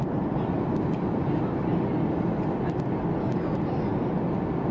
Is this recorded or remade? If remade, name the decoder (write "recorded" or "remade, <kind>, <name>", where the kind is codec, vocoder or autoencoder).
recorded